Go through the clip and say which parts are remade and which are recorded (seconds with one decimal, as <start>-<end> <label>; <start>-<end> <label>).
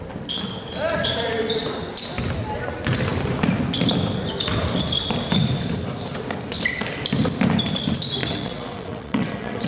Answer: 0.0-8.2 recorded; 8.2-9.7 remade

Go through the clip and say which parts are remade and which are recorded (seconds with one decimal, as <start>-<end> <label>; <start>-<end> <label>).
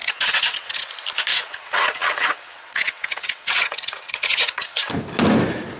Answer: 0.0-0.9 remade; 0.9-1.3 recorded; 1.3-4.8 remade; 4.8-5.8 recorded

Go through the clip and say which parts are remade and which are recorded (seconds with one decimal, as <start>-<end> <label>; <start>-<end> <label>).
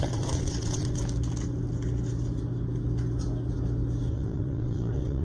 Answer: 0.0-1.0 remade; 1.0-4.1 recorded; 4.1-5.2 remade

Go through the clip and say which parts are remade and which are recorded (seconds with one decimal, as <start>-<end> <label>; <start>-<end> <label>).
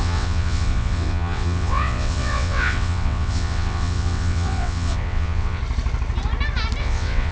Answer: 0.0-5.6 remade; 5.6-6.8 recorded; 6.8-7.3 remade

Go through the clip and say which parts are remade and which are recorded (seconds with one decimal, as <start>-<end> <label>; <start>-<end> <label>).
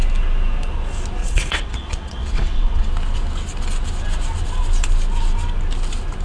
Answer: 0.0-1.2 recorded; 1.2-2.9 remade; 2.9-6.2 recorded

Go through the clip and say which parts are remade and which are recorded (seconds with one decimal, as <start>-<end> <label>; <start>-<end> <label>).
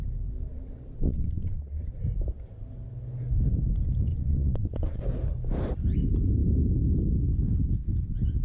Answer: 0.0-0.5 recorded; 0.5-1.9 remade; 1.9-4.1 recorded; 4.1-5.0 remade; 5.0-8.4 recorded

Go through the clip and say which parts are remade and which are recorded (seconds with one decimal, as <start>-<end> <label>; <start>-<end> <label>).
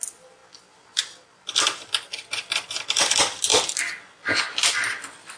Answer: 0.0-5.4 recorded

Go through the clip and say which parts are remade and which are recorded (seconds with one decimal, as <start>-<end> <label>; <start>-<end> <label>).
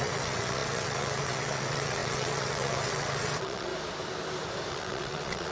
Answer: 0.0-3.7 remade; 3.7-4.7 recorded; 4.7-5.5 remade